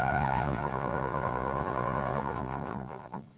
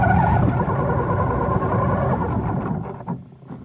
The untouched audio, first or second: second